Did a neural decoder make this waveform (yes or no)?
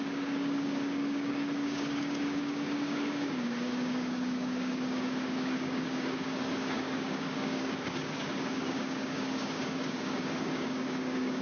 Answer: yes